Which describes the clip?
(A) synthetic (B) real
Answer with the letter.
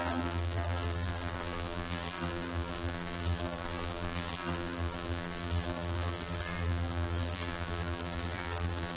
A